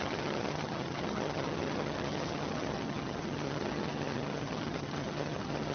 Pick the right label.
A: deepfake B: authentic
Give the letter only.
A